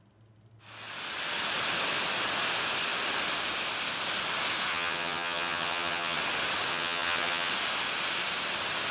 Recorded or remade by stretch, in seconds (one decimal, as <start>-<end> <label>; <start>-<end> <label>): 0.0-4.7 recorded; 4.7-6.2 remade; 6.2-6.7 recorded; 6.7-7.5 remade; 7.5-8.9 recorded